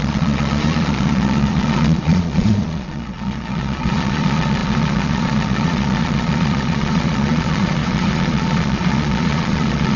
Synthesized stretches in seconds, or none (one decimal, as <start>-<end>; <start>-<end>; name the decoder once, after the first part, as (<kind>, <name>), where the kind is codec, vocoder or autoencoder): 0.0-10.0 (vocoder, Vocos)